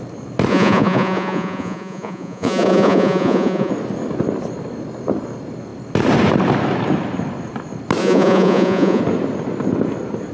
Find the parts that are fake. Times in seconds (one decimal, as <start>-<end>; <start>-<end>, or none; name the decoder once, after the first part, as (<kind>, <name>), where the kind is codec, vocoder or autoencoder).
0.5-3.7 (vocoder, Vocos); 8.0-9.0